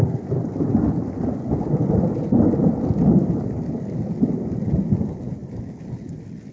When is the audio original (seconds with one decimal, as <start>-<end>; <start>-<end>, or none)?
0.0-6.5